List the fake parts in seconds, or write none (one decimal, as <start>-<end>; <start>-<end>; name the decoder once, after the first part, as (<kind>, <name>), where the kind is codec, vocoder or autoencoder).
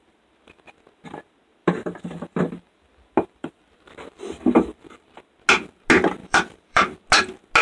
1.6-4.8 (vocoder, BigVGAN v2); 6.2-7.0